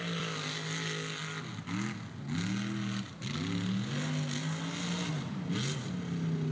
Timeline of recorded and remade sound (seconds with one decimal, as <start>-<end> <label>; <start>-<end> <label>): 0.0-6.5 recorded